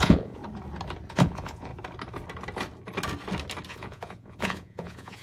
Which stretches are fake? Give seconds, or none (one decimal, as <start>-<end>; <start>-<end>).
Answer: 0.0-0.4; 1.1-1.7; 3.7-5.2

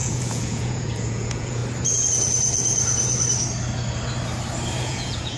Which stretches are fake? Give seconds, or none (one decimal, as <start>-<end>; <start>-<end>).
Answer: 0.0-1.6; 4.8-5.4

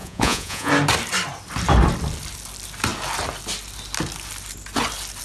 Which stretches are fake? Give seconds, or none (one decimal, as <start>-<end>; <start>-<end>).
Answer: 0.0-0.7

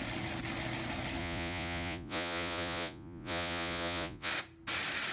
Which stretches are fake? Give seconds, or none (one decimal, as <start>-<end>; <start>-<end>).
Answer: 1.2-4.3

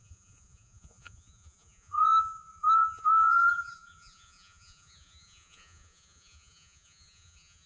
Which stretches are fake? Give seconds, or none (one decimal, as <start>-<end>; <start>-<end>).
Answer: 0.0-7.7

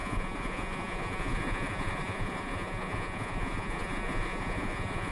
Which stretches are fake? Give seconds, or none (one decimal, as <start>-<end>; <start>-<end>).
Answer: 0.0-5.1

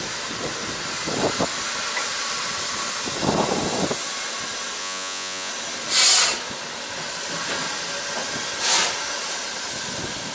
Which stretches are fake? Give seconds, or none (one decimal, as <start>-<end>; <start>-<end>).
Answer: 4.8-5.5

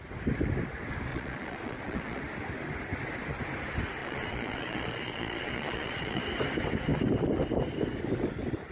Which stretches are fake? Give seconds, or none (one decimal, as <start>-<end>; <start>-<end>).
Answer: 1.1-2.2; 4.0-6.2